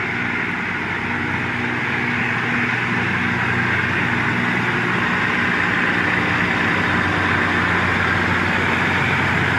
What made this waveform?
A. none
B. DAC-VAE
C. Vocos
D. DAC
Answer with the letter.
A